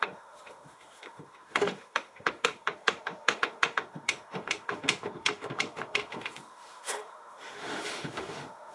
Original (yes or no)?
no